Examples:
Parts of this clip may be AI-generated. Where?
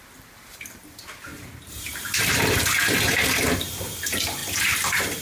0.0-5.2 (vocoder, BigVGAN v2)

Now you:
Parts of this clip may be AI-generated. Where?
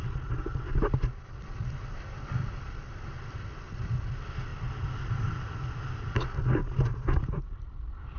none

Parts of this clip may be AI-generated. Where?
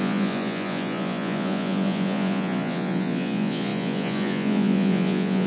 0.0-5.5 (vocoder, Vocos)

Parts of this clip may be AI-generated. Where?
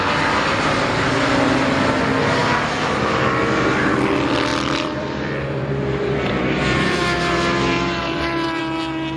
4.5-7.0 (vocoder, BigVGAN v2); 8.0-8.6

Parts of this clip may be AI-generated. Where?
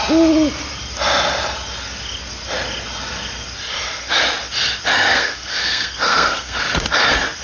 5.1-6.6 (codec, SNAC)